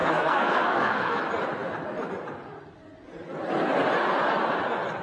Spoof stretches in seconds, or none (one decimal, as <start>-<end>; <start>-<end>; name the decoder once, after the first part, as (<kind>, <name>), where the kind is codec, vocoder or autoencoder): 0.0-1.2 (codec, SNAC)